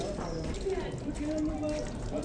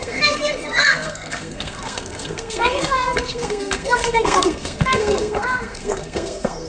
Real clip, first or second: first